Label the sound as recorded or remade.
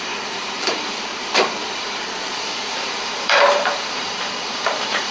remade